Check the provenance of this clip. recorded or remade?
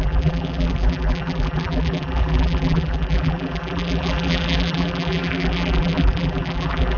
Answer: remade